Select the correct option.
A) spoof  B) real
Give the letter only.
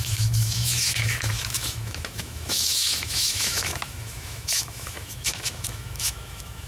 A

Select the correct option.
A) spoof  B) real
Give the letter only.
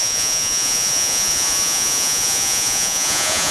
A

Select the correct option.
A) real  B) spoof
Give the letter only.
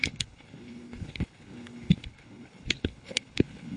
B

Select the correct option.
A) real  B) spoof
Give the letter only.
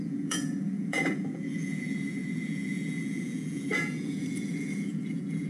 B